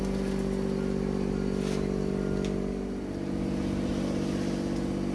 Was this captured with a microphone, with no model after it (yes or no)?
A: yes